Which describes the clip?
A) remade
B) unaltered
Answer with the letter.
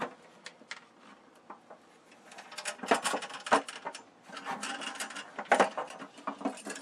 B